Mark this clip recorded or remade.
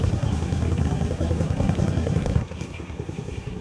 remade